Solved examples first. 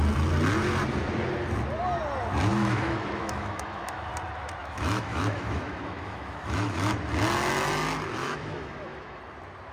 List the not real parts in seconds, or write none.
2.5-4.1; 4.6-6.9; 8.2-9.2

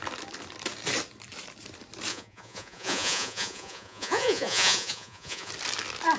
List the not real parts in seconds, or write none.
2.1-5.5

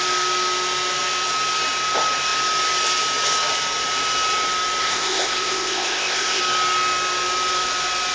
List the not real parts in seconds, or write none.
4.8-6.4

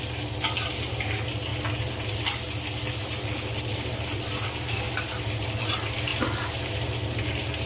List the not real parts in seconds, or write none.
none

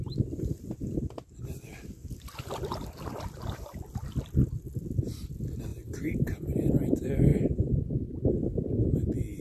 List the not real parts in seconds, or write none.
5.7-6.7; 7.3-8.3

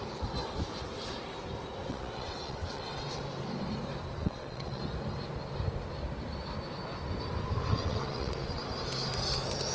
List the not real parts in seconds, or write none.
1.8-3.2; 4.2-4.8; 7.7-8.6